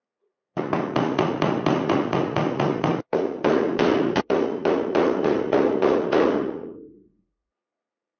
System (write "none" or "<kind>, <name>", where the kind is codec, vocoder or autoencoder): vocoder, Vocos